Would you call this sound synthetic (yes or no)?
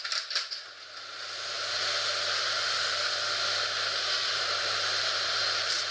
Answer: no